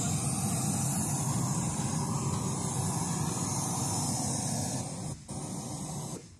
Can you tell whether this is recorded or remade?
recorded